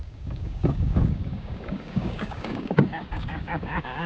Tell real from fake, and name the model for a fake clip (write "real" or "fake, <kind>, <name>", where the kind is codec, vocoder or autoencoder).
fake, codec, DAC